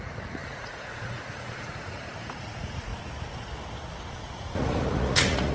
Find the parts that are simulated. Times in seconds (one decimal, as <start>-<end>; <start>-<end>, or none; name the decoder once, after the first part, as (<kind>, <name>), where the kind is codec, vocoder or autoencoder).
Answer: 0.0-2.9 (vocoder, Vocos); 4.1-5.5